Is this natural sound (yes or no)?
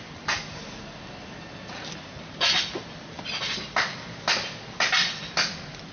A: yes